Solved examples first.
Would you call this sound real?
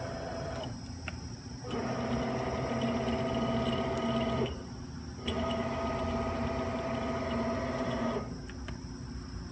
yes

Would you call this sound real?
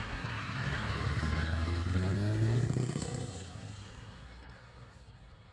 no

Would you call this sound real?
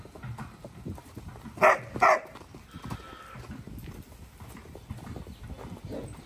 yes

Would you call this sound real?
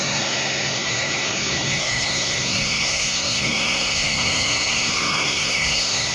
no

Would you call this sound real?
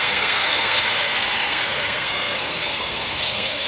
no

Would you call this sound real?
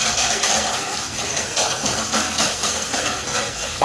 no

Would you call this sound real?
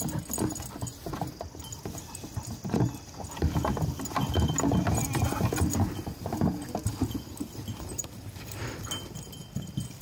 yes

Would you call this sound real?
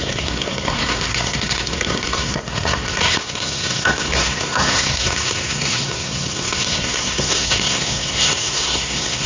no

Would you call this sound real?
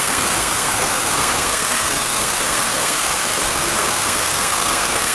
no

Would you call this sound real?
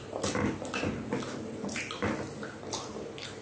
yes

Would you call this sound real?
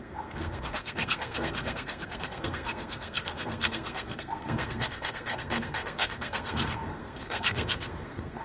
no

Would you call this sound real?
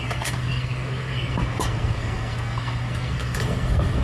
no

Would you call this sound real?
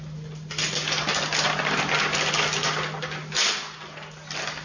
yes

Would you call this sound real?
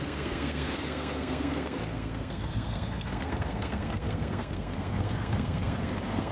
no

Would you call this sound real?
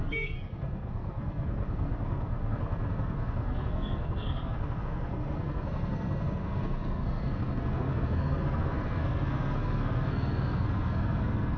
no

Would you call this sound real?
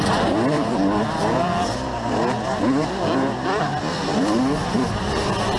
yes